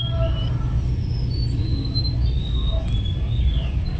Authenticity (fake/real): real